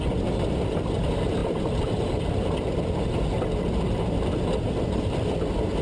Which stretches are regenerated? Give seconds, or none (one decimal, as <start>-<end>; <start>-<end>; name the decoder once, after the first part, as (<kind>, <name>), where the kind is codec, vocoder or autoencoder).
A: 1.4-2.1 (vocoder, BigVGAN v2)

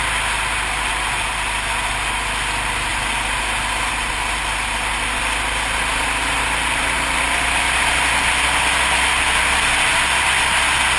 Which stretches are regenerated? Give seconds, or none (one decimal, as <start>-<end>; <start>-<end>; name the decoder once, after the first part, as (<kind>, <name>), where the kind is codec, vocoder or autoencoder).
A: none